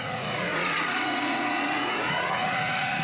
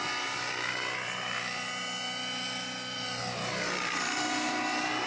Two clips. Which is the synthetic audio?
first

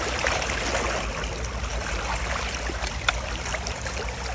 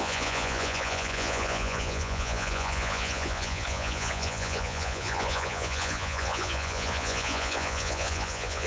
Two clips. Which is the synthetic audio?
second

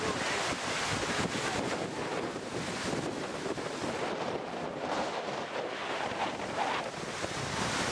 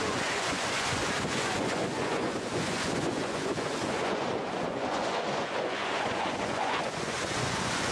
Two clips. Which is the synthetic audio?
second